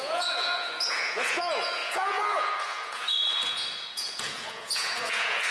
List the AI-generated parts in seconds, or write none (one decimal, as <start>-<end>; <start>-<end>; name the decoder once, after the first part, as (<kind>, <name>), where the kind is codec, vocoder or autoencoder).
0.0-5.5 (vocoder, Vocos)